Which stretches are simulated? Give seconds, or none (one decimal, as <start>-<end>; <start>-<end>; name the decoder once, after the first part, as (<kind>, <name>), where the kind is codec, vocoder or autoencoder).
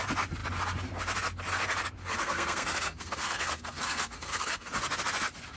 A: 2.0-4.7 (codec, SNAC)